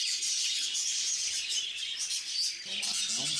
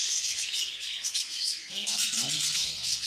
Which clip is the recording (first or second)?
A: first